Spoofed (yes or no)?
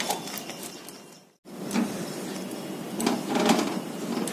no